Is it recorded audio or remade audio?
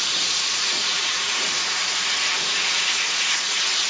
remade